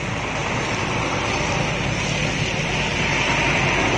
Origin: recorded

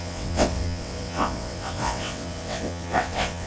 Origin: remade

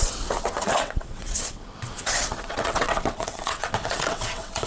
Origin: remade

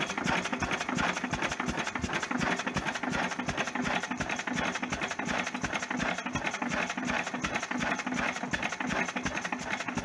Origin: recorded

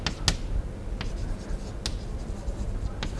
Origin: recorded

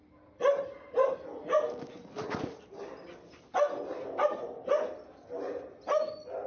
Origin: recorded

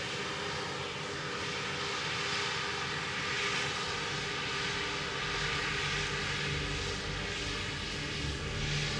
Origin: recorded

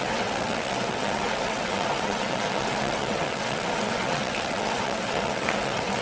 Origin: remade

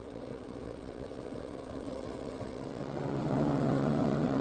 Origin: remade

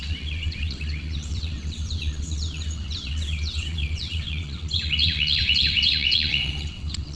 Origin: remade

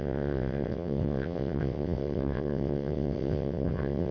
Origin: remade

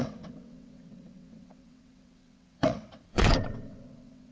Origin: remade